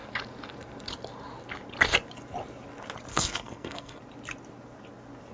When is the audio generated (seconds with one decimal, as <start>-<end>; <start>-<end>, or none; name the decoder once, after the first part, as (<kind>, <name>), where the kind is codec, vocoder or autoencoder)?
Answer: 3.1-4.0 (codec, SNAC)